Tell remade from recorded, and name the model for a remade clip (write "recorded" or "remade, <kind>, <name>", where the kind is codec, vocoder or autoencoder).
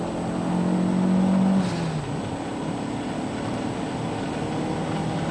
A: recorded